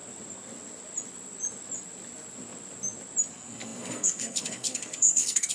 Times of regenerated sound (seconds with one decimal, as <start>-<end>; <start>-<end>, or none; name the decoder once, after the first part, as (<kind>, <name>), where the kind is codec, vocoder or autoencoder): 3.3-5.5 (codec, SNAC)